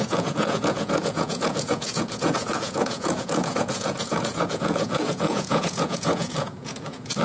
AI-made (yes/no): yes